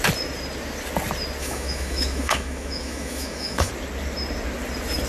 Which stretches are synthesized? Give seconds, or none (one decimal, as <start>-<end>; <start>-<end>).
1.4-3.7